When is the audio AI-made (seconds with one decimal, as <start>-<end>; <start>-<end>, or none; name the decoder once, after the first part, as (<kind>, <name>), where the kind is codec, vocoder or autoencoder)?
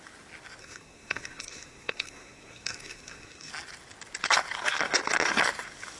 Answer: 0.6-3.5 (codec, SNAC)